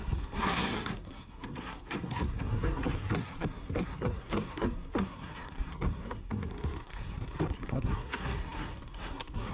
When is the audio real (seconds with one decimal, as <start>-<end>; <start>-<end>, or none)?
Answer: none